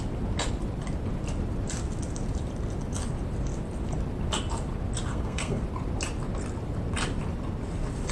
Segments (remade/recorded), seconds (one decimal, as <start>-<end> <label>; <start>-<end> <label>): 0.0-5.1 recorded; 5.1-5.6 remade; 5.6-8.1 recorded